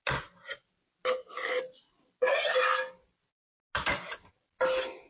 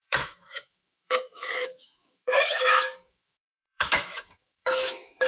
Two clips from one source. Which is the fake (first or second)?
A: second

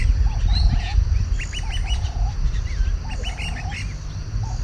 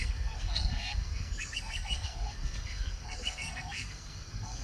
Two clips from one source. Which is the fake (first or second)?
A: second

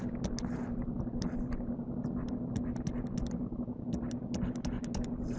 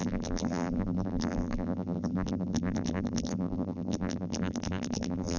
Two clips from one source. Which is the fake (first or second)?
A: second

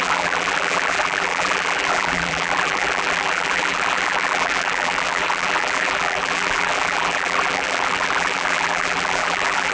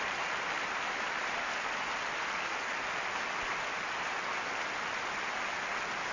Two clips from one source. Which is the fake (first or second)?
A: first